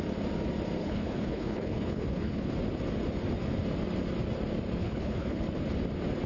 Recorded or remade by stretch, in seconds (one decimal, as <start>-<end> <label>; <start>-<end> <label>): 0.0-0.8 recorded; 0.8-2.5 remade; 2.5-4.8 recorded; 4.8-5.4 remade; 5.4-6.3 recorded